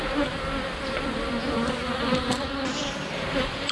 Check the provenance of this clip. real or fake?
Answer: fake